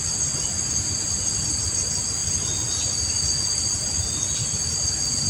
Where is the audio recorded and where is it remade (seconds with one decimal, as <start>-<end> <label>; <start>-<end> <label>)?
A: 0.0-5.3 recorded